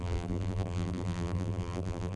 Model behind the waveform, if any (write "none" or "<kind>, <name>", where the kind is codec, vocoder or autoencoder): vocoder, BigVGAN v2